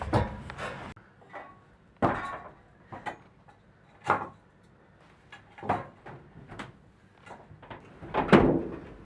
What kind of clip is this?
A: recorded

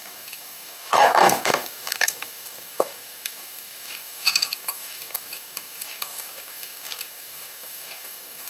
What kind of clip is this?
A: remade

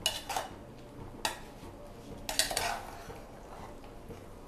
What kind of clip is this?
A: recorded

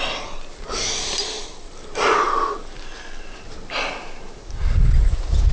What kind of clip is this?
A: recorded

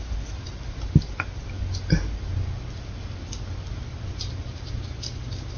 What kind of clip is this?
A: recorded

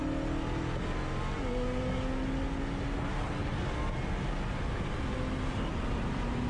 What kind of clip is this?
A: recorded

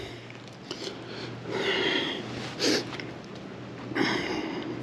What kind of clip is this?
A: recorded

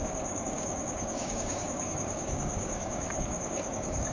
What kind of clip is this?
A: remade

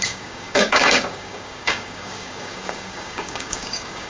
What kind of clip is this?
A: remade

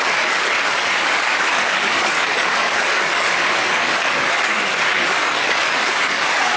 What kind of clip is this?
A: remade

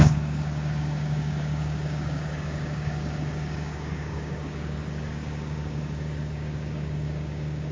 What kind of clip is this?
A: remade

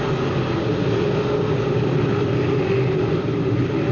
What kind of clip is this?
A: recorded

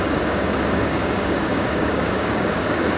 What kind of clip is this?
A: remade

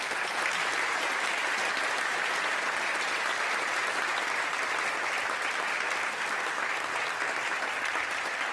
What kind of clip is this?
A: recorded